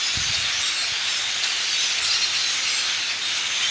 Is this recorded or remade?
recorded